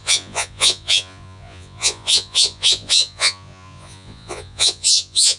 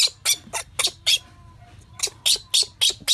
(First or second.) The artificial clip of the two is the first